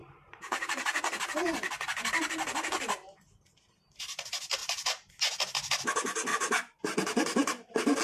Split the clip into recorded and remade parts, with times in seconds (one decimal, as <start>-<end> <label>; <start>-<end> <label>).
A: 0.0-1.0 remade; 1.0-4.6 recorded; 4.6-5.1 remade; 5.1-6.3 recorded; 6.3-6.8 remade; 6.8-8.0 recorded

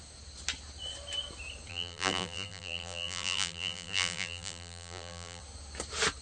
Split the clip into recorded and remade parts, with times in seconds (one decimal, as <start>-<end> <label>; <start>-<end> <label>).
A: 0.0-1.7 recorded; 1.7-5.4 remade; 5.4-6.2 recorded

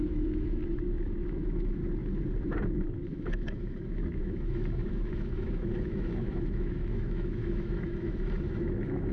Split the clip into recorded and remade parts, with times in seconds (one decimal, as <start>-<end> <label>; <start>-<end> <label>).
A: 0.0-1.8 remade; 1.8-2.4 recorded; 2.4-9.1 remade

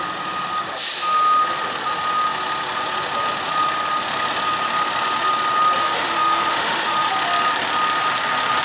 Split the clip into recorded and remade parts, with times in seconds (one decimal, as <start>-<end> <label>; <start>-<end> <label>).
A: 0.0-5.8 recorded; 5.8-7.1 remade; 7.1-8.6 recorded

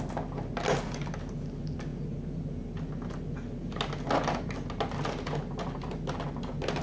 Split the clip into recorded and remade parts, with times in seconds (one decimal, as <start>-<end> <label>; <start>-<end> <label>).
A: 0.0-6.8 recorded

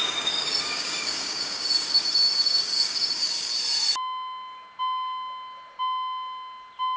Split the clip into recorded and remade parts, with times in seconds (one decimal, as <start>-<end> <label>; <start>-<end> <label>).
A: 0.0-3.5 remade; 3.5-7.0 recorded

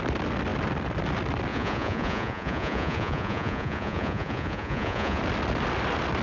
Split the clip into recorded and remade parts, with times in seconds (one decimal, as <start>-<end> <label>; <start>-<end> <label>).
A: 0.0-1.5 recorded; 1.5-5.2 remade; 5.2-6.2 recorded

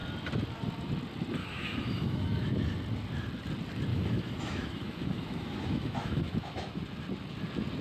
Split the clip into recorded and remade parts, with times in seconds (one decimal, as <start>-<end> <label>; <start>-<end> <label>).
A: 0.0-1.4 recorded; 1.4-2.6 remade; 2.6-3.9 recorded; 3.9-6.8 remade; 6.8-7.8 recorded